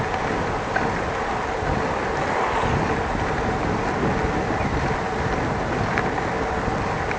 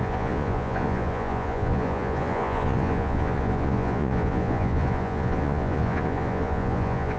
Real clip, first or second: first